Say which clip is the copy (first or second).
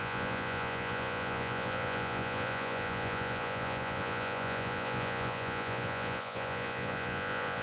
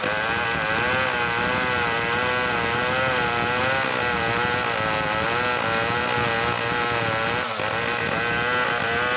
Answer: first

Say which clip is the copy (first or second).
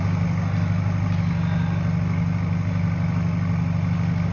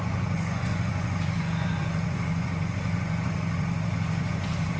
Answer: second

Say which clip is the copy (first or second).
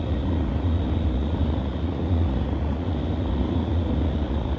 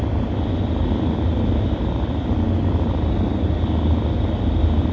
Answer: first